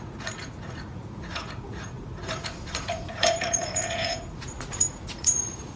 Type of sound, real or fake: fake